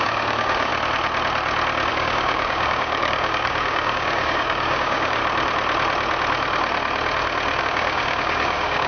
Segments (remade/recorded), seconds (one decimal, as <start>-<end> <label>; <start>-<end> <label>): 0.0-0.7 remade; 0.7-1.9 recorded; 1.9-5.2 remade; 5.2-7.6 recorded; 7.6-8.9 remade